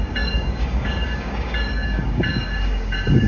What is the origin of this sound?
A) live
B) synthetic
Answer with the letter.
B